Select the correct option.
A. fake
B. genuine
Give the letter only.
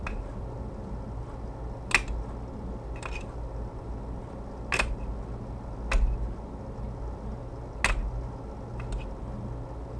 B